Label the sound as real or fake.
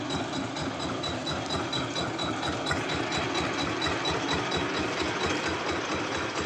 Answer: real